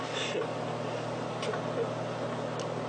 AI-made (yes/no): no